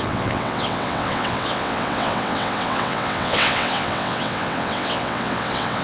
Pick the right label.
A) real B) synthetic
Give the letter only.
B